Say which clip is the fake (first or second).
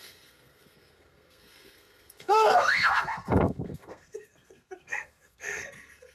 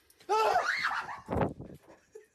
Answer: first